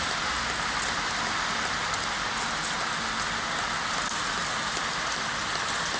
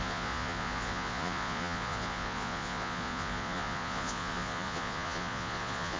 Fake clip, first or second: second